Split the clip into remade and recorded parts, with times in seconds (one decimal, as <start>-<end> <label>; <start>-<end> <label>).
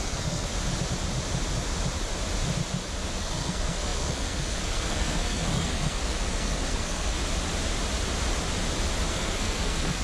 0.0-0.5 remade; 0.5-3.2 recorded; 3.2-7.2 remade; 7.2-9.1 recorded; 9.1-10.0 remade